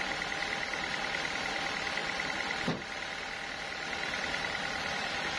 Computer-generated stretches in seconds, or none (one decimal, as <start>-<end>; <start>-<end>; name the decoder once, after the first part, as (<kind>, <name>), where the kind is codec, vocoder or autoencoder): 2.0-5.4 (vocoder, BigVGAN v2)